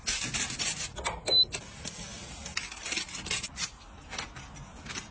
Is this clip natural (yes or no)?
yes